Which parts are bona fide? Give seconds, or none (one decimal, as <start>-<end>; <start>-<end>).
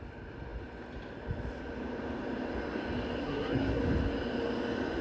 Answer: 0.0-3.2; 3.8-5.0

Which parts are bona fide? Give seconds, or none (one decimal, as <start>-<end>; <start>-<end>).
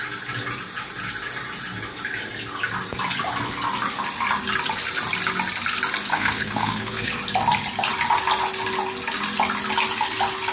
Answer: 0.0-6.1; 7.1-10.5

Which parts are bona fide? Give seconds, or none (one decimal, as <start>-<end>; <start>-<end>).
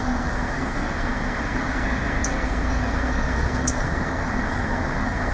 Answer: none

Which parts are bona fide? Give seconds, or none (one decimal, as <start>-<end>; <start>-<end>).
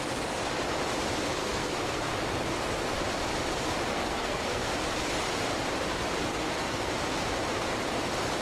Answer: 0.0-1.4; 2.1-3.9; 4.7-6.3; 6.9-8.4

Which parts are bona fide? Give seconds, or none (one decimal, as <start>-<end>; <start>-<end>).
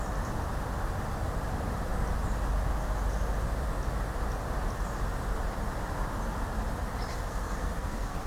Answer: 0.0-7.1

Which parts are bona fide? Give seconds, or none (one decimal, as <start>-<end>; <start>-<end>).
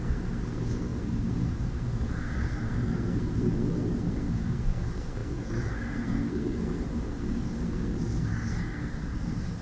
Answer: none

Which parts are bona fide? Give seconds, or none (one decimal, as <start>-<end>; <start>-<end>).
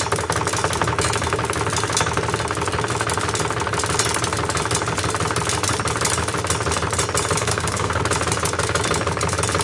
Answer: 0.0-7.4; 8.0-9.6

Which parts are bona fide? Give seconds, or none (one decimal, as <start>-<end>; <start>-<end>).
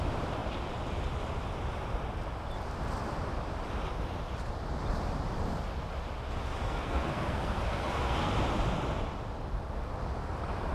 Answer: 0.0-6.6; 8.3-10.7